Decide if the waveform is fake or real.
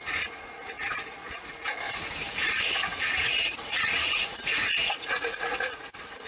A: fake